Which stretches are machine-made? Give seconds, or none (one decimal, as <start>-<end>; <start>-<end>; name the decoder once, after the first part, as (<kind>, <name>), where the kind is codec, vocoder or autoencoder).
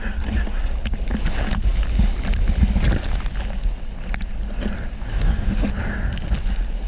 5.1-5.7 (autoencoder, DAC-VAE)